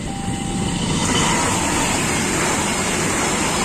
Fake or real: real